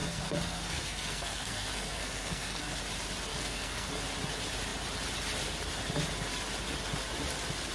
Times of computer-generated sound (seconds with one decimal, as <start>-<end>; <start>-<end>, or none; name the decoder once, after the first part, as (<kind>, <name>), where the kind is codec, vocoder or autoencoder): 0.0-2.8 (codec, SNAC); 3.3-3.9